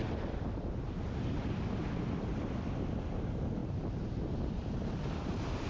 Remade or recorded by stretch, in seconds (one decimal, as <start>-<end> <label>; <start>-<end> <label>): 0.0-3.6 recorded; 3.6-4.1 remade; 4.1-5.7 recorded